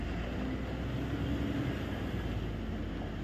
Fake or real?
real